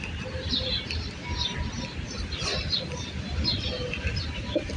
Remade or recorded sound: recorded